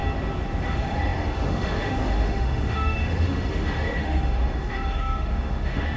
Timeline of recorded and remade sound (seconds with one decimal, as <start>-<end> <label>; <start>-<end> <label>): 0.0-0.6 recorded; 0.6-6.0 remade